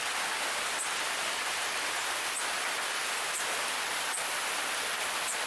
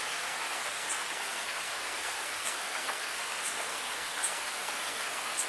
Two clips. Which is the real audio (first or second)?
first